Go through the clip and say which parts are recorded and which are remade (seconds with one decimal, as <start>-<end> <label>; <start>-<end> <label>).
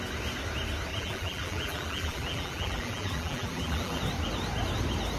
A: 0.0-0.9 recorded; 0.9-4.0 remade; 4.0-5.2 recorded